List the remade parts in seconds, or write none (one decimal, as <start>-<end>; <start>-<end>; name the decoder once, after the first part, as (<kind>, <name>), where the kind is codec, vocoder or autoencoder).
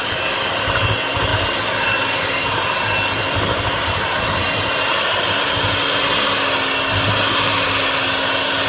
none